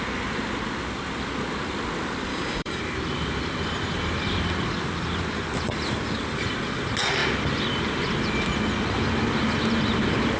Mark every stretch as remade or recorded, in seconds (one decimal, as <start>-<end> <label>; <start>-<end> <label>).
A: 0.0-2.3 recorded; 2.3-2.8 remade; 2.8-10.4 recorded